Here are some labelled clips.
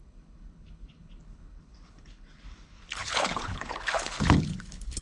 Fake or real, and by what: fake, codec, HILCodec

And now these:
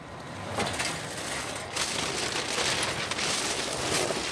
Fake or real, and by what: real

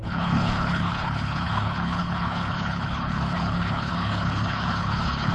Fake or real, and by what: fake, codec, HILCodec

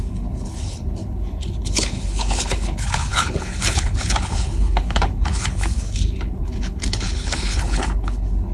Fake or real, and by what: fake, codec, HILCodec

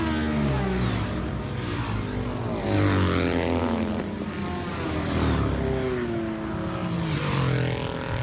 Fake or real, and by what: real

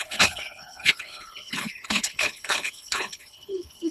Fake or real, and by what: fake, codec, HILCodec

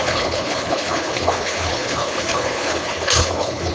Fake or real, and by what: fake, codec, HILCodec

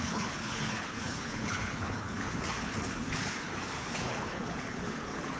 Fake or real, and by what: fake, codec, HILCodec